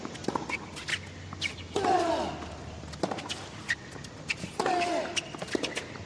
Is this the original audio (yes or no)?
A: yes